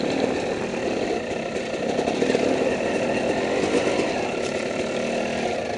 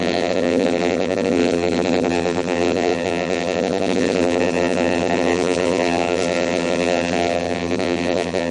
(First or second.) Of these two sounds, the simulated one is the second